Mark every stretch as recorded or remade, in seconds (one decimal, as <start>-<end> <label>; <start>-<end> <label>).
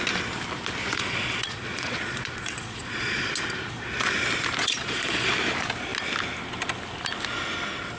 0.0-0.8 recorded; 0.8-3.3 remade; 3.3-4.6 recorded; 4.6-5.3 remade; 5.3-8.0 recorded